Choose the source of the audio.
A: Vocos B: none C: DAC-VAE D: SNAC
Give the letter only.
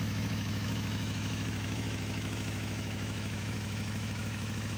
C